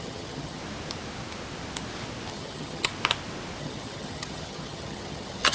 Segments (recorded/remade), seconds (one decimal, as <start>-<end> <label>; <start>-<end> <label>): 0.0-0.6 remade; 0.6-2.3 recorded; 2.3-2.9 remade; 2.9-3.6 recorded; 3.6-5.5 remade